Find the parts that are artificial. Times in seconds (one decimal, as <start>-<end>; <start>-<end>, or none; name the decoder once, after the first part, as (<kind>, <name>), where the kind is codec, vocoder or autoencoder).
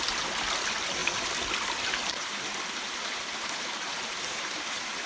none